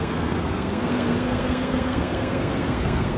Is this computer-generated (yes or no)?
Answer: yes